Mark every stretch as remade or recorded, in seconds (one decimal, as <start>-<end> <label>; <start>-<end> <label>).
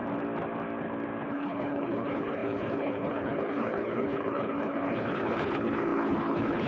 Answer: 0.0-1.3 recorded; 1.3-6.7 remade